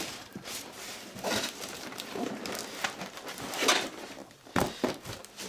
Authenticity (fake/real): real